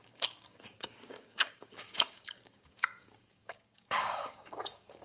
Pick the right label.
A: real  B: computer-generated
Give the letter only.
B